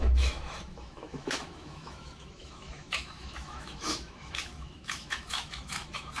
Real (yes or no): no